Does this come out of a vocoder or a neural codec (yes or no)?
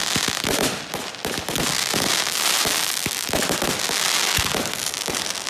no